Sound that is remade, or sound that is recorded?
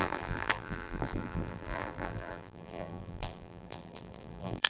remade